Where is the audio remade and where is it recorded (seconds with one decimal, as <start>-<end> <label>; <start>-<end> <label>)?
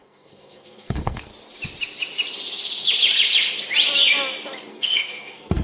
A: 0.0-1.3 remade; 1.3-4.7 recorded; 4.7-5.6 remade